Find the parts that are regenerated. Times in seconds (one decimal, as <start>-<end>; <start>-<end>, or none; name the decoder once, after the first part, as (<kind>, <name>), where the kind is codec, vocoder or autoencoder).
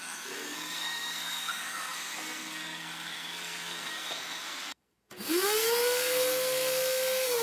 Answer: 0.0-7.4 (codec, SNAC)